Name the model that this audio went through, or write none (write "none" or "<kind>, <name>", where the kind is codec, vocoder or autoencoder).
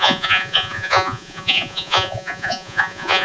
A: vocoder, Vocos